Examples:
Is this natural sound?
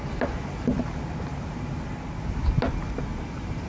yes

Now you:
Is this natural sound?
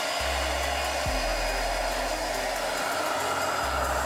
yes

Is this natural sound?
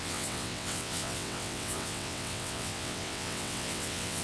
no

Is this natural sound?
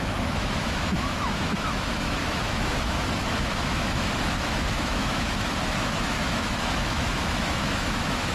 no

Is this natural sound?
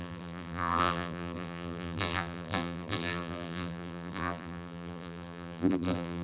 no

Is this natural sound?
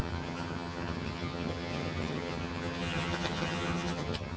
no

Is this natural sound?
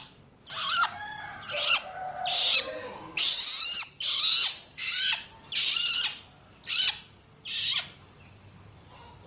yes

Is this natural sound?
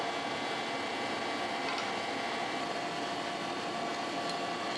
yes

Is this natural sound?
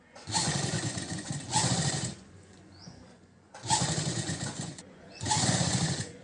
no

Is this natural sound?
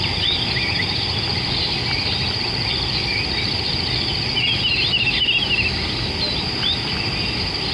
yes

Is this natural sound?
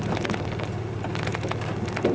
yes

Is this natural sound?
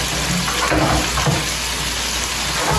yes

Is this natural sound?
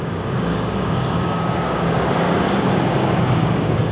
no